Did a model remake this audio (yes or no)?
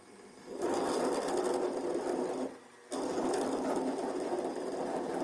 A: no